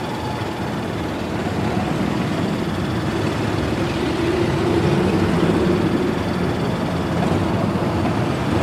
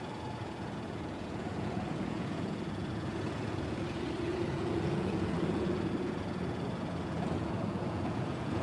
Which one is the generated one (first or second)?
second